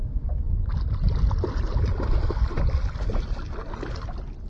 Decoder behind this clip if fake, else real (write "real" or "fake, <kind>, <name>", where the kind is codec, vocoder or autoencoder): real